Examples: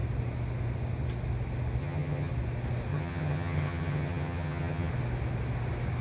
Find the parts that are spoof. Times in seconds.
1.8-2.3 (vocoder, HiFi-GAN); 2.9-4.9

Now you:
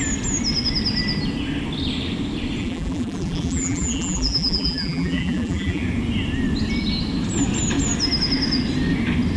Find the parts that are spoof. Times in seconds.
2.6-5.8 (vocoder, BigVGAN v2)

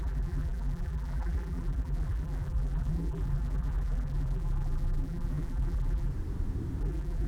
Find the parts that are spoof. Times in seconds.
0.0-6.1 (vocoder, BigVGAN v2); 6.8-7.3